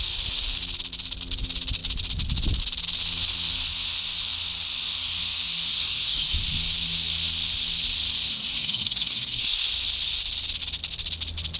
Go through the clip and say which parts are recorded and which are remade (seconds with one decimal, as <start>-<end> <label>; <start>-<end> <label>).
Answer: 0.0-5.7 recorded; 5.7-6.4 remade; 6.4-8.3 recorded; 8.3-9.7 remade; 9.7-11.6 recorded